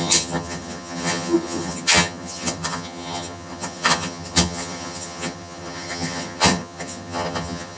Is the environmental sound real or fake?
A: fake